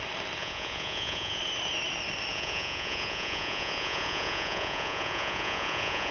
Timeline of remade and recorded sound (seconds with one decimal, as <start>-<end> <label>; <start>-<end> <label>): 0.0-0.4 recorded; 0.4-1.4 remade; 1.4-2.3 recorded; 2.3-6.1 remade